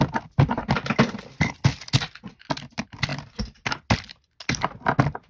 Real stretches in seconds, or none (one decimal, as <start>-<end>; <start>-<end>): 0.0-5.3